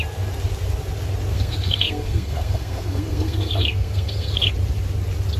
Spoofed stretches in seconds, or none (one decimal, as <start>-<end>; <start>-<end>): 1.3-4.5